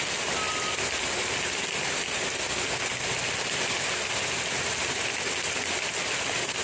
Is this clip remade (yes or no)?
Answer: no